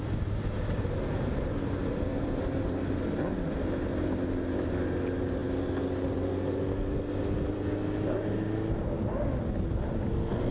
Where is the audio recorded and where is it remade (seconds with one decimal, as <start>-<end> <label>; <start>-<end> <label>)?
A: 0.0-10.5 recorded